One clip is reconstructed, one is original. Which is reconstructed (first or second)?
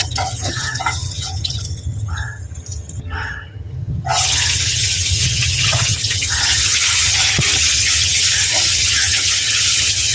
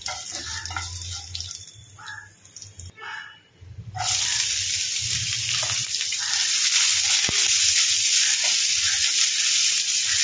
first